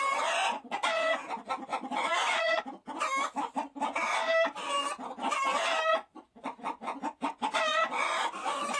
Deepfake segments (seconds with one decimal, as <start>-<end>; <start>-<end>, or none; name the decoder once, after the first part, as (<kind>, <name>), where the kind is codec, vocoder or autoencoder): 0.4-1.2 (vocoder, Vocos); 1.7-2.6; 5.9-8.8